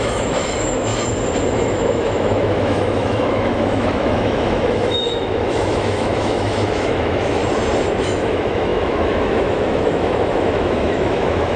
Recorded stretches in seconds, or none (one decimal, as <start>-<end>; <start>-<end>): 0.9-1.5; 7.4-8.0